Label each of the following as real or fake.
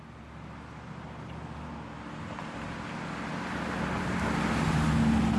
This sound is real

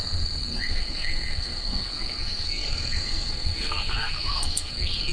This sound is fake